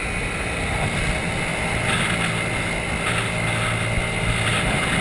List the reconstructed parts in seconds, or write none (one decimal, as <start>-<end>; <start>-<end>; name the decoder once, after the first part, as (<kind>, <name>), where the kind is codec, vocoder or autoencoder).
none